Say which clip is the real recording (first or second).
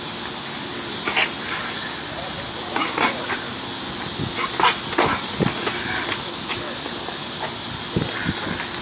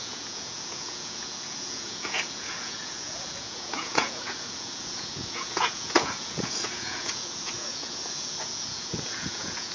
first